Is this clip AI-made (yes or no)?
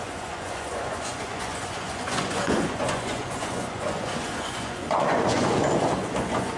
yes